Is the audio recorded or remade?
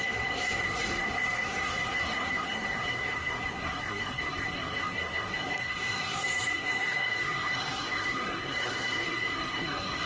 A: remade